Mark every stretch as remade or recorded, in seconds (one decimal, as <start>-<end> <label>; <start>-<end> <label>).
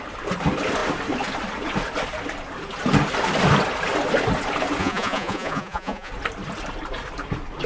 0.0-4.8 recorded; 4.8-6.1 remade; 6.1-7.7 recorded